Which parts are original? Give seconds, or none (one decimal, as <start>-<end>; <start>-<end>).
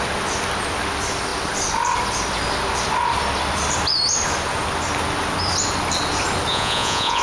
0.0-6.5